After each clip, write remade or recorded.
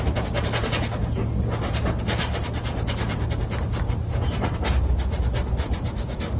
recorded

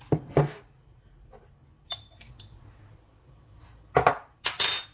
recorded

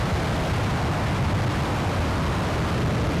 recorded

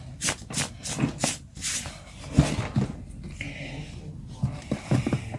recorded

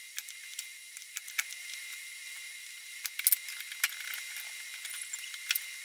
recorded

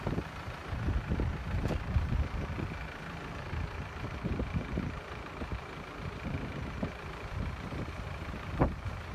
remade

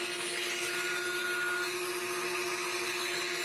recorded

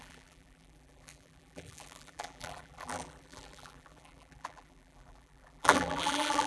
remade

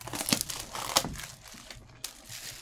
recorded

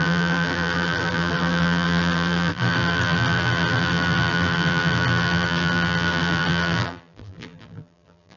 remade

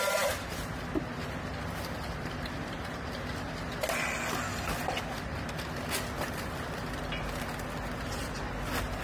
recorded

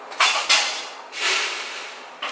recorded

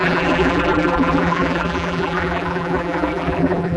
remade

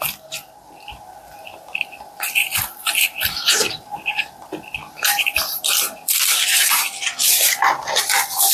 remade